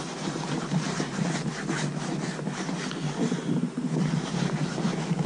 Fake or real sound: real